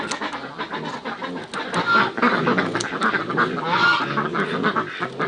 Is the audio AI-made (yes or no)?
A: no